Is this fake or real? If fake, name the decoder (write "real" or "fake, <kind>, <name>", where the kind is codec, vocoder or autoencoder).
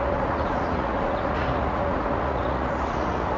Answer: fake, vocoder, Vocos